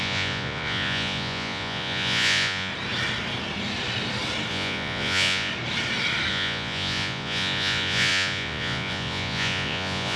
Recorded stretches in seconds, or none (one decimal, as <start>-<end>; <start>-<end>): 2.7-4.5; 5.5-6.3